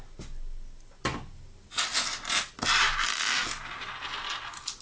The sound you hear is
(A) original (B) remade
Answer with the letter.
A